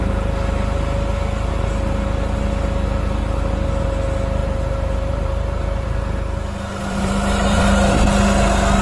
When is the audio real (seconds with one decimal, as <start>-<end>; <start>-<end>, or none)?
0.0-4.4; 5.9-6.8; 7.6-8.8